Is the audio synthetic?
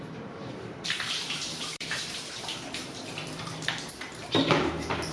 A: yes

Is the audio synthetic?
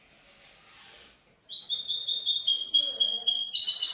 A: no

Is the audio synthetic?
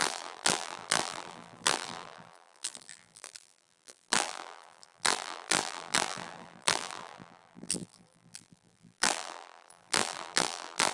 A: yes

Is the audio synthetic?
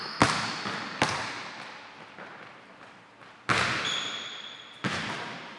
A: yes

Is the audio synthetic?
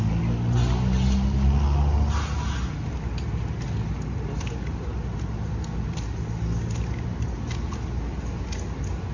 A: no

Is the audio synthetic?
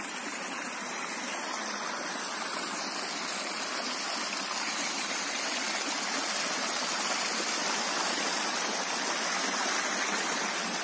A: no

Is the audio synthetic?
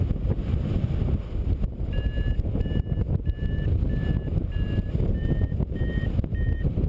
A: no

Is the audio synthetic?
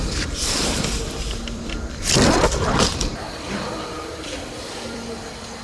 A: yes